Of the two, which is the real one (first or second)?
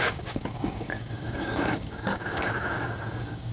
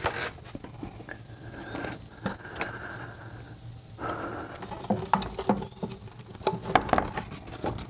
second